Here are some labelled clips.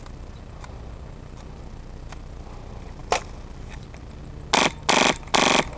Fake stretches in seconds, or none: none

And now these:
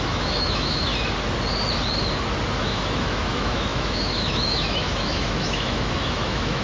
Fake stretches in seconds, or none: 0.0-0.9 (autoencoder, DAC-VAE); 2.6-6.6

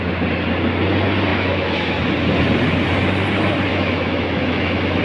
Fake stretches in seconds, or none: 1.3-2.0 (autoencoder, DAC-VAE); 3.7-5.0

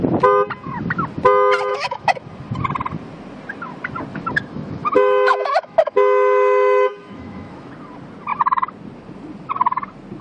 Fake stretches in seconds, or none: 1.7-2.2 (autoencoder, DAC-VAE); 4.1-7.7